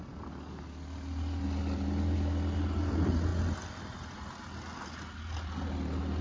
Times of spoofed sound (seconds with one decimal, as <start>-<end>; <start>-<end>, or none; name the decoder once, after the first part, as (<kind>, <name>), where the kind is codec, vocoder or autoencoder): none